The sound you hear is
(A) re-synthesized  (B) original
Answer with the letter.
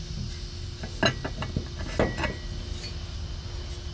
B